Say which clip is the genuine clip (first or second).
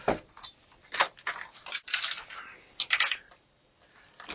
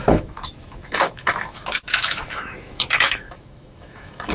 first